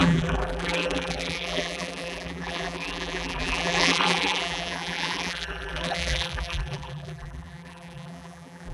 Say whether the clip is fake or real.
fake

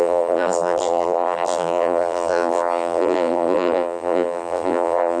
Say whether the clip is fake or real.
fake